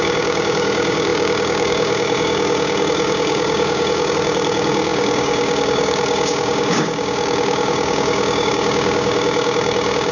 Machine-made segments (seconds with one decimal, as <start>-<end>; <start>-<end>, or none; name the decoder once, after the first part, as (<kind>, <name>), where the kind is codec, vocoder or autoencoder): 0.0-10.1 (codec, DAC)